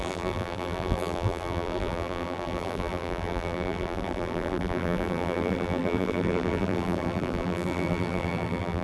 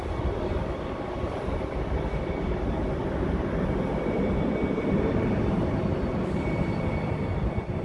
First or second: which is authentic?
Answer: second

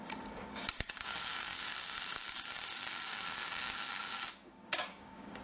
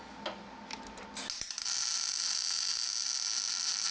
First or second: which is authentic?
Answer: second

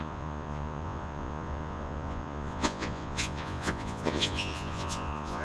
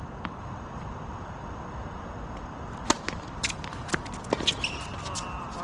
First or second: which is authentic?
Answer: second